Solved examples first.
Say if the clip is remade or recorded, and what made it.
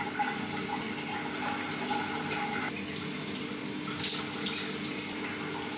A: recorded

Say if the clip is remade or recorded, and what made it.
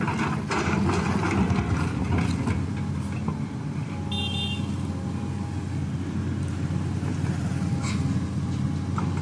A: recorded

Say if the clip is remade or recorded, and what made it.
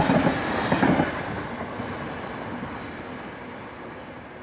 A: recorded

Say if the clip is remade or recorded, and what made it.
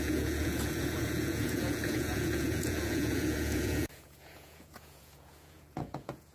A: remade, vocoder, Vocos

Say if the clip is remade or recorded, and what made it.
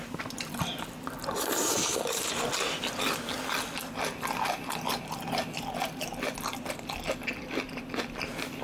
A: recorded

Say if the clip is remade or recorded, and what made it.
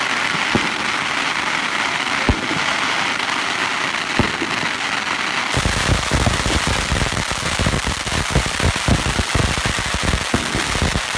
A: recorded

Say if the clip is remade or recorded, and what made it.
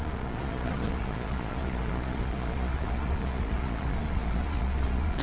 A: remade, vocoder, Vocos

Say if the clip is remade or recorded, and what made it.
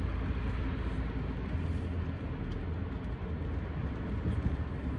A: recorded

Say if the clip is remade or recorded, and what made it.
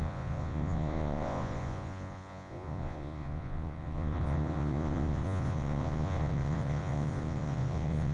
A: remade, vocoder, Vocos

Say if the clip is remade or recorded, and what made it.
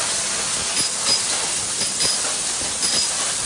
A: recorded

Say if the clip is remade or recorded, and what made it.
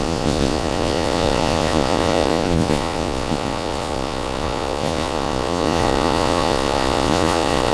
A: remade, vocoder, Vocos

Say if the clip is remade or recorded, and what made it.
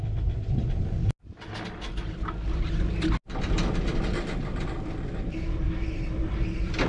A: recorded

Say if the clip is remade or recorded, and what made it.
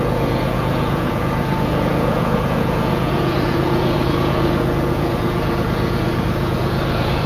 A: remade, vocoder, Vocos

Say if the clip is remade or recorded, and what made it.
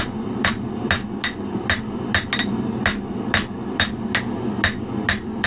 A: recorded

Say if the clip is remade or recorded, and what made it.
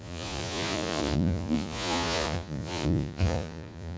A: remade, vocoder, Vocos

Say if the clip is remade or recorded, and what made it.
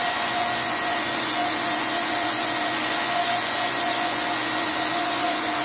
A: remade, vocoder, Vocos